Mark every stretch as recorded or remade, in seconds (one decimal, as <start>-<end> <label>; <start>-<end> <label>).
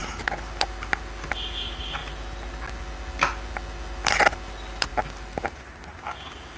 0.0-6.6 recorded